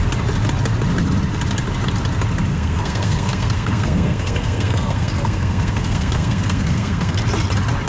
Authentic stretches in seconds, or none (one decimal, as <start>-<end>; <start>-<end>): 0.0-2.5; 7.2-7.9